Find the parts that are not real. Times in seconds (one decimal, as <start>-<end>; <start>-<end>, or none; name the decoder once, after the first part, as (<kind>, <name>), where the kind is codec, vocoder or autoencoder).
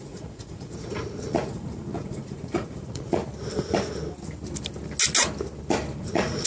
0.0-3.2 (vocoder, Vocos); 6.0-6.5